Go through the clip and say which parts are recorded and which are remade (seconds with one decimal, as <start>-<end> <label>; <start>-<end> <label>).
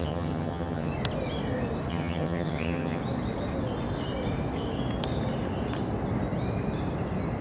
0.0-0.9 remade; 0.9-1.9 recorded; 1.9-3.0 remade; 3.0-7.4 recorded